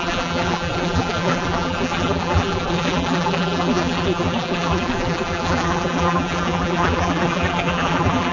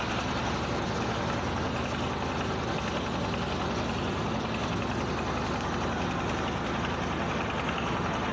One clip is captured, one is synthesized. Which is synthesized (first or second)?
first